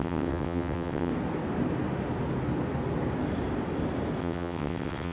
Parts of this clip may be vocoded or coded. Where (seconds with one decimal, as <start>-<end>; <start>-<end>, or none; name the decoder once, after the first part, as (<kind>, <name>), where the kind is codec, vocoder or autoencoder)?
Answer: 0.0-1.1 (vocoder, WaveNeXt); 4.2-5.1